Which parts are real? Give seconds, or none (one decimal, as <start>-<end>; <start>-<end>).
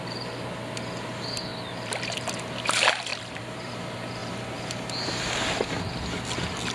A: 0.0-1.5; 2.1-3.1; 3.7-6.7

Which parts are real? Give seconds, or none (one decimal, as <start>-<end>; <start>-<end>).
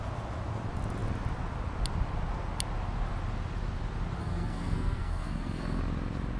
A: 0.0-4.2; 5.8-6.4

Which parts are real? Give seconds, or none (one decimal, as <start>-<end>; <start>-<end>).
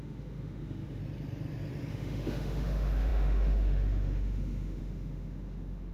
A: 1.0-1.9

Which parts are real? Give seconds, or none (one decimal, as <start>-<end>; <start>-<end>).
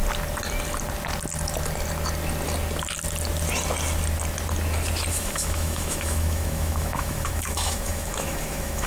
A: 0.0-5.1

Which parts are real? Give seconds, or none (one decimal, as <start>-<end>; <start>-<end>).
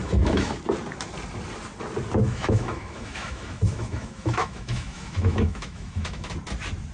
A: 0.6-2.2; 6.3-6.9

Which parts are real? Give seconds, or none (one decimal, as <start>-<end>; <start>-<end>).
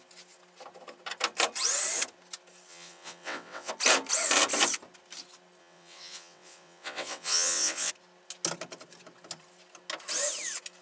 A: 0.0-2.7; 3.7-5.6; 7.9-10.8